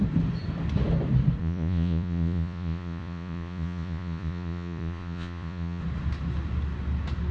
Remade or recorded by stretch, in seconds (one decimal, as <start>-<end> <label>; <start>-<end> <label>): 0.0-1.4 recorded; 1.4-5.8 remade; 5.8-7.3 recorded